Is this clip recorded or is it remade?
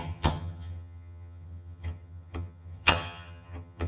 remade